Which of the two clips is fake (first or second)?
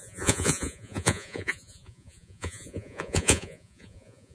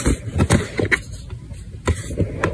first